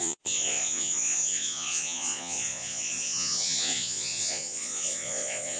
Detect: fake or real fake